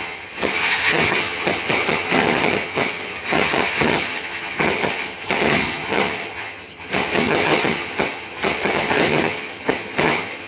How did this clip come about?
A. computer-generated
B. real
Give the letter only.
A